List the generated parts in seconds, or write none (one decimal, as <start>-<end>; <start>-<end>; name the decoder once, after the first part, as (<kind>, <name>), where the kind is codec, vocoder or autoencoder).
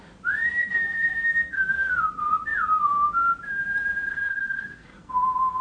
0.6-2.1 (codec, SNAC); 4.1-5.1